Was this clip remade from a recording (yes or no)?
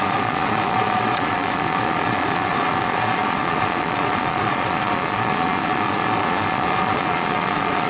yes